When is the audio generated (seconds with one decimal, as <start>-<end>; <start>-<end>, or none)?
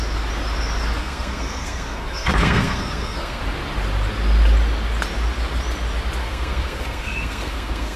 1.0-3.4; 6.2-8.0